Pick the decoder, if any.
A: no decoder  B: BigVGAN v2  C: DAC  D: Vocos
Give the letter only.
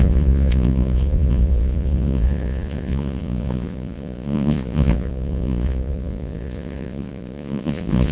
D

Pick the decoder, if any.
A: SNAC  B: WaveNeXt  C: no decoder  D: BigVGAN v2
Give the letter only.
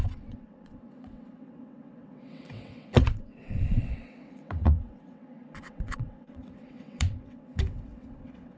B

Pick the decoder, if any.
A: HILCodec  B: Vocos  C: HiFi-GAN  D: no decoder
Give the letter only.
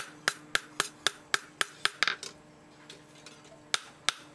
D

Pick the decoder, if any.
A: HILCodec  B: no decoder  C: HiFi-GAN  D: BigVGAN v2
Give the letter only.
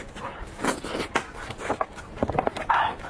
B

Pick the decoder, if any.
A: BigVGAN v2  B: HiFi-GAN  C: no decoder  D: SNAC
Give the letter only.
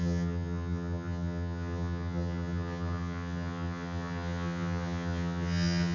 B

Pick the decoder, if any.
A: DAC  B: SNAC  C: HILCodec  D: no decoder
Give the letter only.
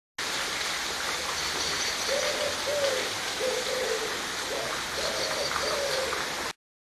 D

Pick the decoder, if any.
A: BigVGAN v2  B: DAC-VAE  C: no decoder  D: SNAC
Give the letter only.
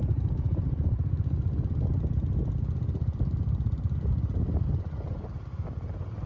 C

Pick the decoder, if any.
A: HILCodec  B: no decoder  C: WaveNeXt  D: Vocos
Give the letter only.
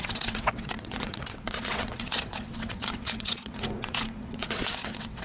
C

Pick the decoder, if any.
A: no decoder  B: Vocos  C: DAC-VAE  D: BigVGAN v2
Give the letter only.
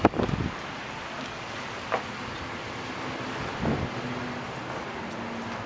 A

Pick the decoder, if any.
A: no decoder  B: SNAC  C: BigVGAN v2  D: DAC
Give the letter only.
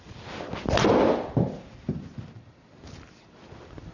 A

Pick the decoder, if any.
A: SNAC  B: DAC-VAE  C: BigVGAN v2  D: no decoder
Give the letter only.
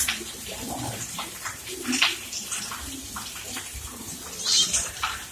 C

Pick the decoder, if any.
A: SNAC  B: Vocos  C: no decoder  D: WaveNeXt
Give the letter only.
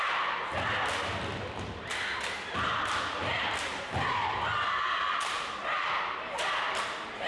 C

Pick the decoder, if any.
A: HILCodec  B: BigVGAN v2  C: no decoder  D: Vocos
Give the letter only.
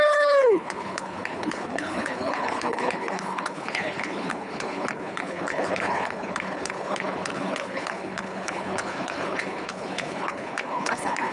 A